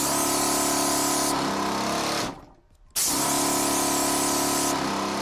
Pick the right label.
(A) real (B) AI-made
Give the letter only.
A